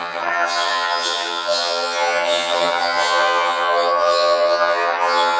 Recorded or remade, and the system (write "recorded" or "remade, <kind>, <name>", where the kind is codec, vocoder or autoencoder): remade, vocoder, HiFi-GAN